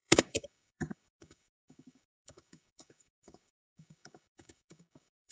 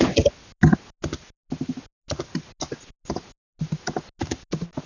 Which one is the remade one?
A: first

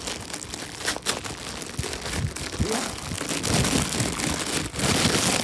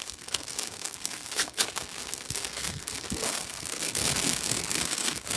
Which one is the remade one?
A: second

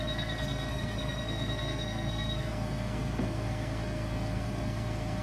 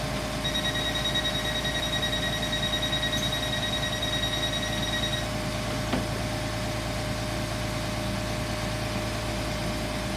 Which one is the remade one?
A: first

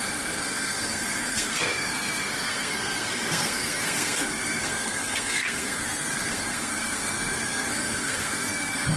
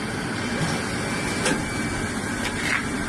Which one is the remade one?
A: first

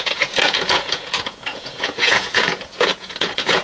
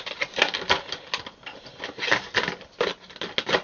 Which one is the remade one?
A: first